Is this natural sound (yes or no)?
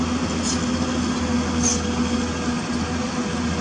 yes